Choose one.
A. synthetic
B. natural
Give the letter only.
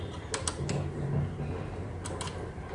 B